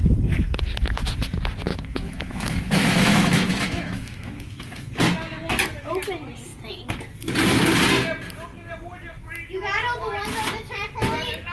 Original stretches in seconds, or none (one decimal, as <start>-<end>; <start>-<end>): 0.0-1.7; 4.9-11.5